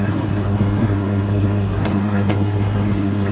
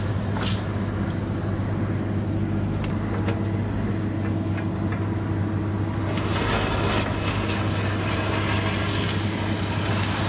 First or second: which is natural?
second